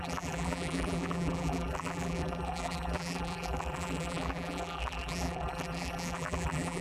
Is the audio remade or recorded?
remade